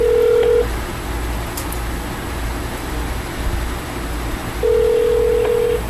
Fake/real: real